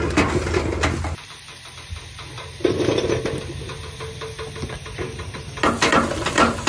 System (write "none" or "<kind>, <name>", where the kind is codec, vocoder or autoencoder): none